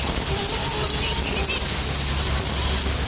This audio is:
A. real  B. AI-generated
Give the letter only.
A